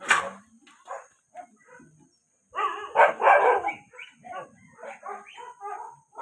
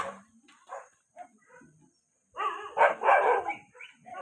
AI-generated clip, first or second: second